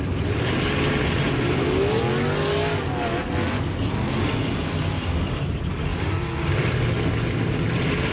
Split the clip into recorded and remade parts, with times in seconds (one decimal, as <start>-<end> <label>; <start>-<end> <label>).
0.0-8.1 recorded